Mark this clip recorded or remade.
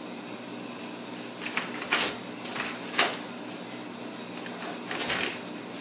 recorded